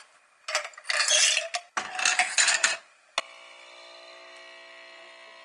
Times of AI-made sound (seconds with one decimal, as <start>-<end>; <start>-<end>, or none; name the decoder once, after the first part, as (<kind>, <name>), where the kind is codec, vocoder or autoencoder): 2.1-2.8 (vocoder, BigVGAN v2)